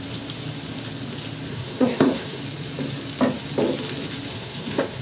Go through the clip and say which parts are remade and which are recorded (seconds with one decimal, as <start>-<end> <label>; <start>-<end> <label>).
0.0-1.5 recorded; 1.5-2.4 remade; 2.4-4.3 recorded; 4.3-5.0 remade